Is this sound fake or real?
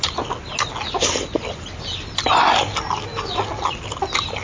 real